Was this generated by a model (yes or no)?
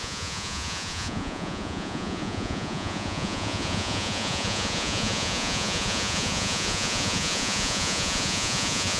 yes